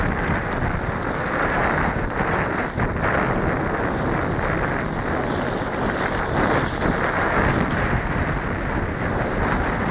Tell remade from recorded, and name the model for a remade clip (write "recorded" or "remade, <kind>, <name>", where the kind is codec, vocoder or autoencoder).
recorded